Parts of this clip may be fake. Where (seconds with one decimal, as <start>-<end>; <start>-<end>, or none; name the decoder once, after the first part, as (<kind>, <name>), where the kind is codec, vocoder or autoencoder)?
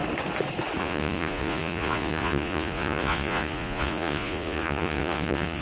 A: 0.8-5.6 (vocoder, Vocos)